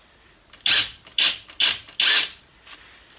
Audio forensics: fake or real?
real